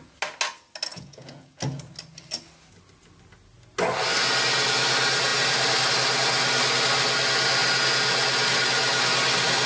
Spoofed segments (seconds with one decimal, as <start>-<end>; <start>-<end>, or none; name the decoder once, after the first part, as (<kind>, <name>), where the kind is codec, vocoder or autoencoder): 0.9-1.6 (vocoder, Vocos)